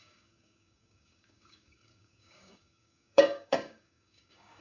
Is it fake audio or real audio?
fake